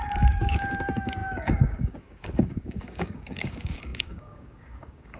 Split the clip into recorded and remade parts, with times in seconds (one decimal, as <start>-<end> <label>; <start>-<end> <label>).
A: 0.0-5.2 remade